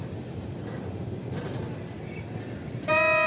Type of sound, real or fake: real